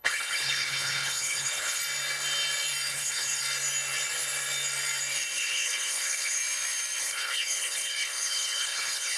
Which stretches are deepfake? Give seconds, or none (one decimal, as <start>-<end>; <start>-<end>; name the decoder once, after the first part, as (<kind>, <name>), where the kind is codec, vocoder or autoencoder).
0.0-1.8 (codec, HILCodec); 2.9-3.4; 5.4-6.4; 7.0-9.2